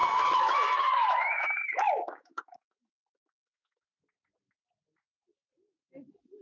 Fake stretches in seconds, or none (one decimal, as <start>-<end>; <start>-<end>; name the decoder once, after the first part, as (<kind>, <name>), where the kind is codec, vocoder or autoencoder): 0.0-3.8 (autoencoder, DAC-VAE)